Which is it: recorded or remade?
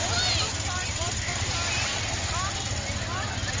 recorded